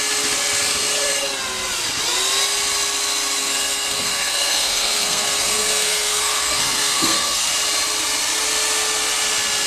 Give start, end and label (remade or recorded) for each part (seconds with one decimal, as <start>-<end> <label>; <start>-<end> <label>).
0.0-3.4 recorded; 3.4-7.5 remade; 7.5-9.7 recorded